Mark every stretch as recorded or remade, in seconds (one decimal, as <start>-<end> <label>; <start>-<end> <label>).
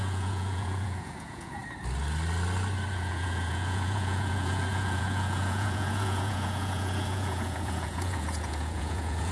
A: 0.0-1.6 remade; 1.6-2.9 recorded; 2.9-9.3 remade